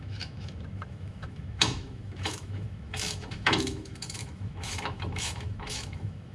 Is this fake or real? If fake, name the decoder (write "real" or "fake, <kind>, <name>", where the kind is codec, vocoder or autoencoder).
fake, autoencoder, DAC-VAE